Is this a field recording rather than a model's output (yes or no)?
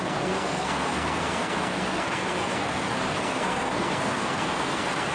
no